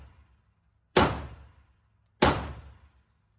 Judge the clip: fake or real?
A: real